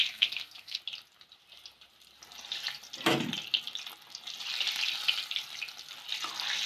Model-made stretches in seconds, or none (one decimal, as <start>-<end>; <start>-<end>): 0.0-0.8